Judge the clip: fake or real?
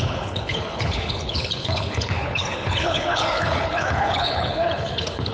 fake